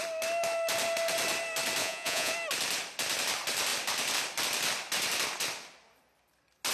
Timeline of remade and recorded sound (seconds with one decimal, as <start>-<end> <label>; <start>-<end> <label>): 0.0-1.8 recorded; 1.8-2.3 remade; 2.3-6.7 recorded